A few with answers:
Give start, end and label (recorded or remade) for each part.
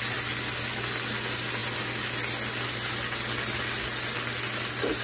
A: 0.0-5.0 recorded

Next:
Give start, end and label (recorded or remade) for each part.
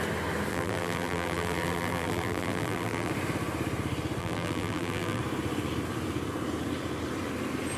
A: 0.0-0.5 recorded; 0.5-3.1 remade; 3.1-4.2 recorded; 4.2-5.2 remade; 5.2-7.8 recorded